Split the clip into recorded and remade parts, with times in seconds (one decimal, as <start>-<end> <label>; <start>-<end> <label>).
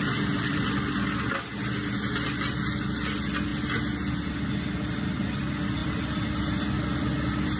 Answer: 0.0-7.6 recorded